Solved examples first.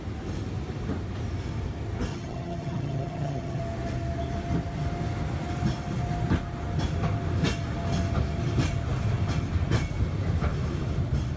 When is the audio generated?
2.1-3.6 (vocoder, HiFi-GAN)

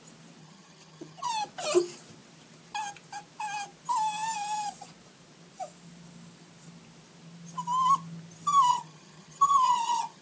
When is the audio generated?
0.4-1.3 (vocoder, HiFi-GAN); 8.7-10.2

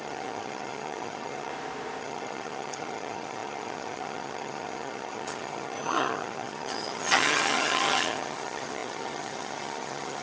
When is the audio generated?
0.0-1.5 (vocoder, HiFi-GAN); 2.0-10.2

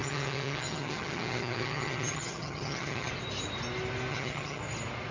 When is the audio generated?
0.0-3.1 (vocoder, HiFi-GAN); 4.1-4.6

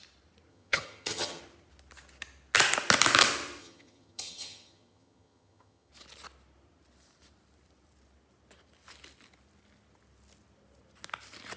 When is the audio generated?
0.5-1.4 (vocoder, HiFi-GAN); 3.6-5.9

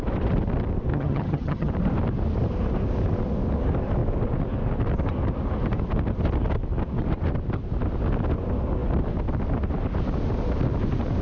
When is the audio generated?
0.9-1.7 (vocoder, HiFi-GAN)

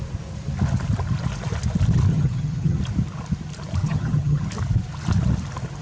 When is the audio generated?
2.1-2.8 (vocoder, HiFi-GAN); 3.8-4.5

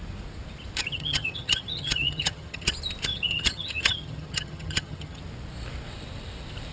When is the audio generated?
0.8-2.7 (vocoder, HiFi-GAN); 3.1-5.2